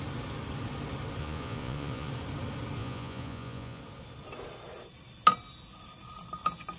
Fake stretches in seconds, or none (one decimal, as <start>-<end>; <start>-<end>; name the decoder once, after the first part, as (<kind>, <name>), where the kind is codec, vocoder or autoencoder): 1.2-2.1 (vocoder, Vocos); 2.8-3.8